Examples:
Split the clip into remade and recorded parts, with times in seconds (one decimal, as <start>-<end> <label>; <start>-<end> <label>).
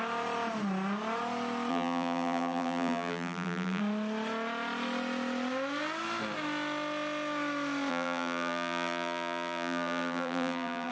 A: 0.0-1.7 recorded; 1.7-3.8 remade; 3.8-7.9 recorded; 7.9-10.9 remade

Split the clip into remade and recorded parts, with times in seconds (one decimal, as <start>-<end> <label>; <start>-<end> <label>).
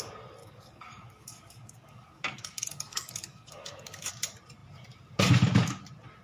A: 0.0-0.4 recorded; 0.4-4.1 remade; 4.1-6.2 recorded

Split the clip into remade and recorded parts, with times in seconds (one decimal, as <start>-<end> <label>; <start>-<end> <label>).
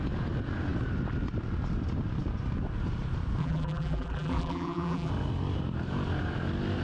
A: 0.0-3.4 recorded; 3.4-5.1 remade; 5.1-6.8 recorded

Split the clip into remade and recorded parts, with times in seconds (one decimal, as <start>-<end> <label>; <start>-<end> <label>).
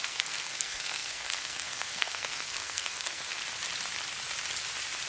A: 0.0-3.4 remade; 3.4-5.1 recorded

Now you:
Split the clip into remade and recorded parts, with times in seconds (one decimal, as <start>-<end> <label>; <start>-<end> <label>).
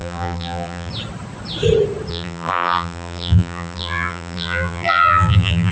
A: 0.0-0.9 remade; 0.9-2.1 recorded; 2.1-5.7 remade